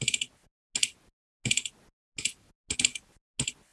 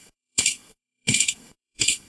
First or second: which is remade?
second